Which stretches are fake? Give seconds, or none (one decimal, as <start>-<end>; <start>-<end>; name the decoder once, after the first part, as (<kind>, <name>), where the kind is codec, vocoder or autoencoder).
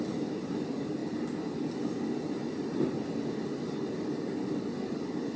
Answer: none